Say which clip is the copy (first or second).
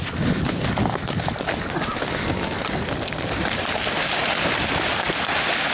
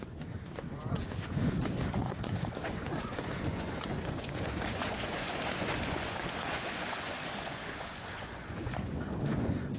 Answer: second